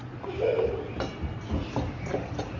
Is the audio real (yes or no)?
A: yes